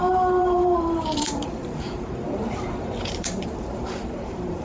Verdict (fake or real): fake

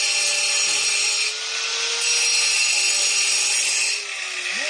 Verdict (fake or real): real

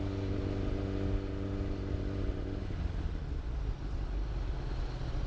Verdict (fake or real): real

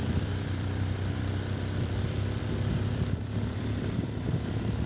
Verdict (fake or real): fake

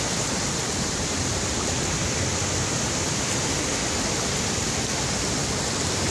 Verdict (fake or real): fake